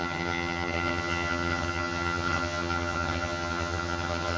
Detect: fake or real fake